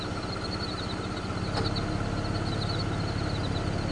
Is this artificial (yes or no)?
no